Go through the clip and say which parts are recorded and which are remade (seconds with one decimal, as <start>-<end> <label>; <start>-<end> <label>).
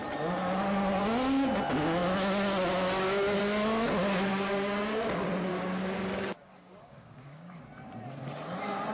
0.0-4.3 recorded; 4.3-5.0 remade; 5.0-5.5 recorded; 5.5-7.6 remade; 7.6-8.9 recorded